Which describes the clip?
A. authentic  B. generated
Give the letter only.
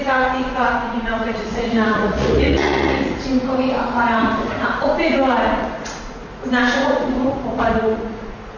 B